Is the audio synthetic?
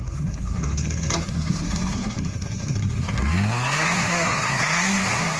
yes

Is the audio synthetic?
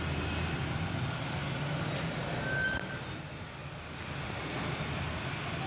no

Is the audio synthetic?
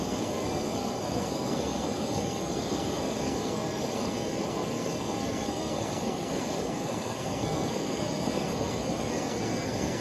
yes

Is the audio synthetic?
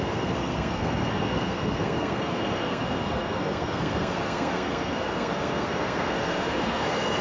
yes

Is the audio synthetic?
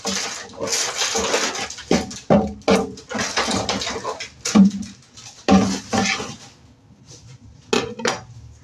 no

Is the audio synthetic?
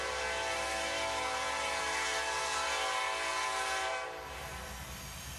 no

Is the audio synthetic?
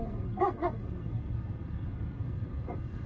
yes